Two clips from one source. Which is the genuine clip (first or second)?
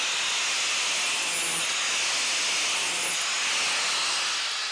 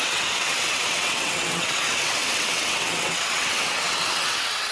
first